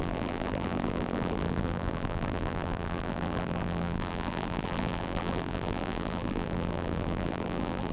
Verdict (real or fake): fake